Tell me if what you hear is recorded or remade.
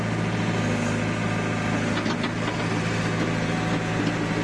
recorded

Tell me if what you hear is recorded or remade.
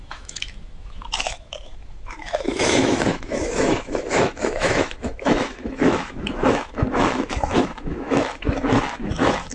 remade